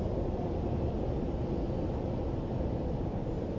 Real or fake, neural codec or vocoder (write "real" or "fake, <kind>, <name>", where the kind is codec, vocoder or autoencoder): real